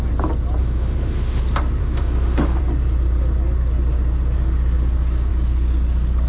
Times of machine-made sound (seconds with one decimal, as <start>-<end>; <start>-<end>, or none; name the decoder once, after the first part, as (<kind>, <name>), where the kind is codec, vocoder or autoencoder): 0.6-1.4 (autoencoder, DAC-VAE); 1.8-2.6